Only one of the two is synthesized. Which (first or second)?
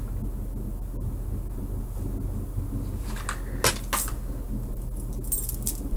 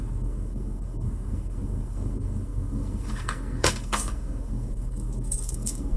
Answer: second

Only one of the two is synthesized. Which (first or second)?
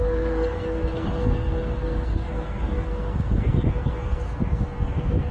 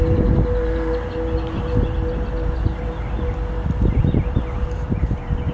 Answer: first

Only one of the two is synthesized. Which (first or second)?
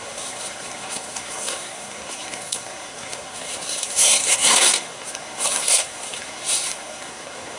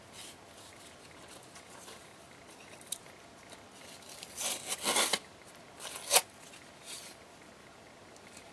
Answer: first